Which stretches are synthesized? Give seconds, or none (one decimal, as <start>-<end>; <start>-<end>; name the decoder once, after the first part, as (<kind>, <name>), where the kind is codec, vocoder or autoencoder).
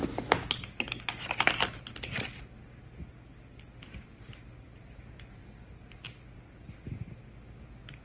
none